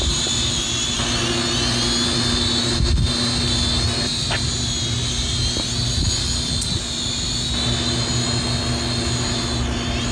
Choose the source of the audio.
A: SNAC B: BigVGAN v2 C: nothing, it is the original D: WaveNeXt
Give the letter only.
C